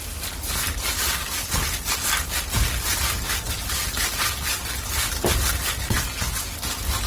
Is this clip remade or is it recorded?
recorded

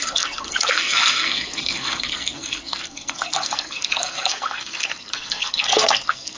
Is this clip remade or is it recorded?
remade